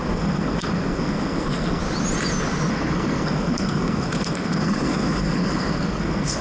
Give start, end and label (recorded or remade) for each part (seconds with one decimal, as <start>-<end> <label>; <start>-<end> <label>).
0.0-1.8 remade; 1.8-2.7 recorded; 2.7-6.4 remade